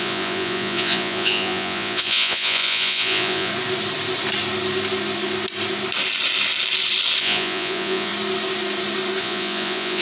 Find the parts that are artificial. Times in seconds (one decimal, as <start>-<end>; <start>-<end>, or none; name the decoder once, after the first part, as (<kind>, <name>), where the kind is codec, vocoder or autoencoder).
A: 0.0-3.5 (vocoder, Vocos); 7.2-8.1; 9.2-10.0